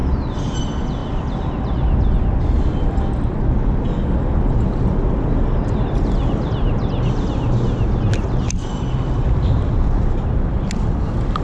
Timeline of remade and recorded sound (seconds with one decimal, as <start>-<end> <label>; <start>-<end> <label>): 0.0-11.4 recorded